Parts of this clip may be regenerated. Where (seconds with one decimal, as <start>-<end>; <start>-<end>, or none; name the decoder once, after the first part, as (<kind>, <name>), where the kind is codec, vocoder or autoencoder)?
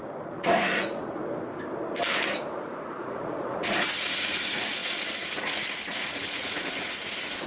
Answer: 0.0-1.2 (vocoder, Vocos); 2.4-7.5